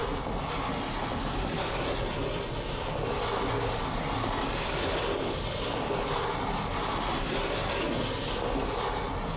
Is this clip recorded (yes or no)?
yes